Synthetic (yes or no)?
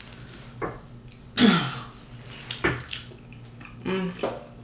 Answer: no